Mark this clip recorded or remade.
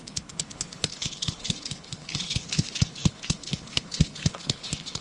remade